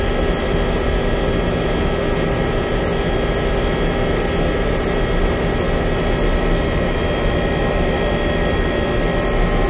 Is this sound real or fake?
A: real